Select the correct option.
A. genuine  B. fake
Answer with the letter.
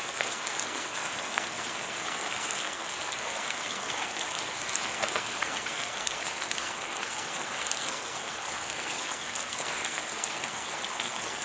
B